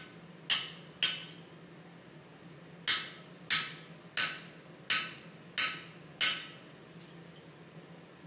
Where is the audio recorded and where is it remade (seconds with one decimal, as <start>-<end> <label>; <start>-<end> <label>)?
0.0-8.3 recorded